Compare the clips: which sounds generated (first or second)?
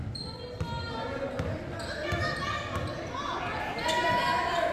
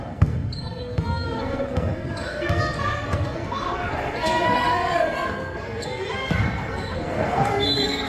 second